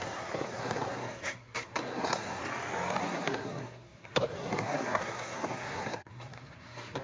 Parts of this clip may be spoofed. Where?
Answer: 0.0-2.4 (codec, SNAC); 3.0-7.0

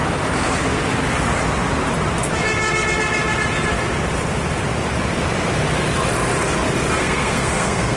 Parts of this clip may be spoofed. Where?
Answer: 7.0-8.0 (codec, SNAC)

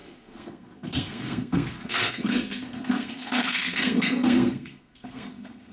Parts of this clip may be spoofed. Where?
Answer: 0.0-5.7 (codec, SNAC)

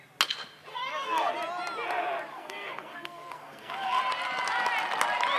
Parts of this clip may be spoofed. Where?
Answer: 0.7-1.3 (codec, SNAC); 2.3-4.0

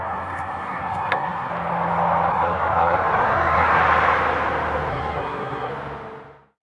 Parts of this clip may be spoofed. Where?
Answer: 0.0-1.5 (codec, SNAC); 2.3-3.8; 4.9-5.7

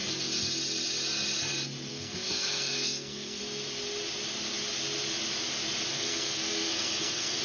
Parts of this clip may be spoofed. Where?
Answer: 1.9-3.4 (codec, SNAC); 5.9-7.4

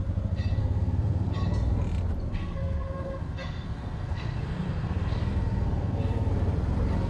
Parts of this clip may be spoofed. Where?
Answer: 0.6-1.3 (codec, SNAC); 2.3-6.3

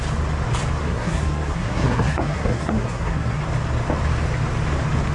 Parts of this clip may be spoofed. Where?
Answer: 0.8-3.4 (codec, SNAC)